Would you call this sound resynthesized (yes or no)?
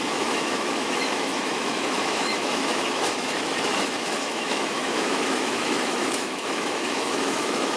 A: yes